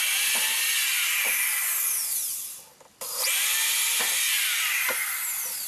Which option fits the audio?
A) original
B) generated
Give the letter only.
A